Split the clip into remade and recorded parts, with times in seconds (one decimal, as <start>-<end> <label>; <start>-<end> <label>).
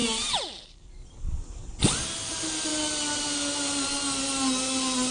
0.0-1.7 remade; 1.7-5.1 recorded